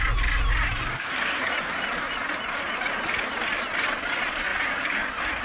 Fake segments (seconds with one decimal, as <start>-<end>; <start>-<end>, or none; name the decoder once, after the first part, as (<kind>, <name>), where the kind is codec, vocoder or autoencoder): 0.9-1.5 (codec, SNAC)